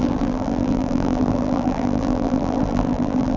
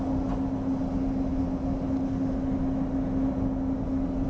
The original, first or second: second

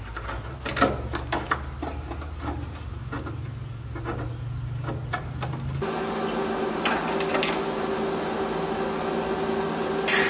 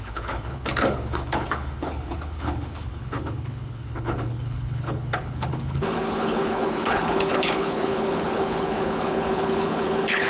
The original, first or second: first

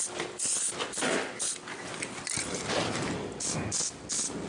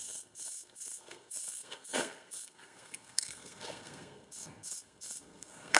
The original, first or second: first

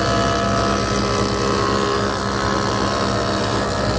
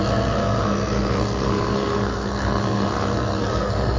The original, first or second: first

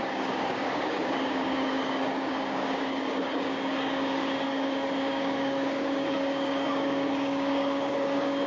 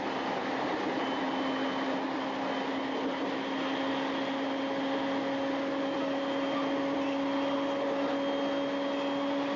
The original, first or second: second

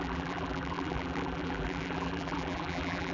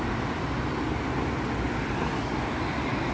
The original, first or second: second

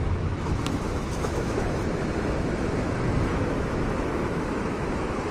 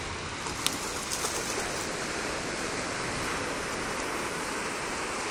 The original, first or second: second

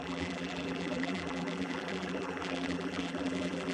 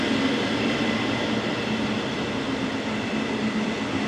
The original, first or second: second